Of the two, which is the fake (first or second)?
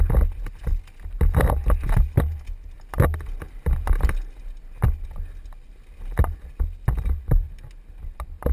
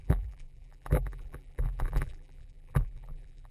second